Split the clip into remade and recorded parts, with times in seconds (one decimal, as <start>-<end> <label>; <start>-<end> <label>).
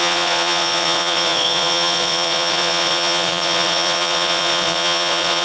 0.0-5.4 remade